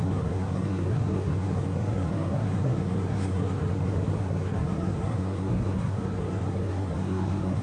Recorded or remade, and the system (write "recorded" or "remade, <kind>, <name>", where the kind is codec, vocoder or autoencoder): remade, codec, SNAC